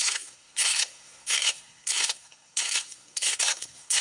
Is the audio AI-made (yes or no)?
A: yes